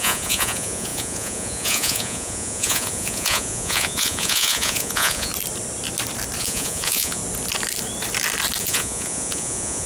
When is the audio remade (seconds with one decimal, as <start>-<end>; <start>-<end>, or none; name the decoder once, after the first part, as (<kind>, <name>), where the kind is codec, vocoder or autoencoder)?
0.0-5.3 (vocoder, Vocos); 6.4-7.2; 8.6-9.9

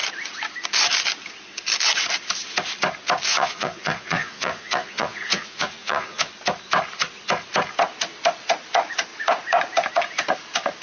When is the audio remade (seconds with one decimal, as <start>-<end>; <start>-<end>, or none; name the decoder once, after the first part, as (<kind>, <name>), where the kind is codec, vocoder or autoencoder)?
3.3-6.3 (vocoder, Vocos)

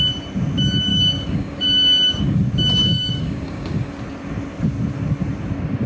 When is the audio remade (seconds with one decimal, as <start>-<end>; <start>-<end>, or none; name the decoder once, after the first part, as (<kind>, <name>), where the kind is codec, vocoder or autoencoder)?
0.9-2.4 (codec, DAC); 2.8-3.9

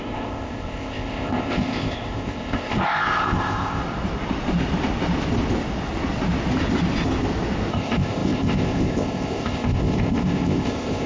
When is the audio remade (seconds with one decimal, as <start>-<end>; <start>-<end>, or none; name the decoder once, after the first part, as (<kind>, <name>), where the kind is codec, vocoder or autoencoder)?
0.0-3.8 (codec, ZipCodec); 7.7-11.1